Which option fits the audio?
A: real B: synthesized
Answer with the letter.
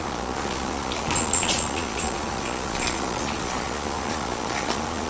B